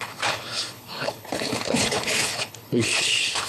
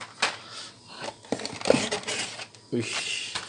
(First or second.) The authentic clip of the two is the second